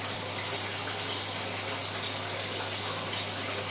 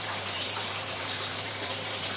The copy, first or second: second